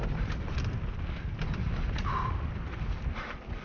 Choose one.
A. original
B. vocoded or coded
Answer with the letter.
A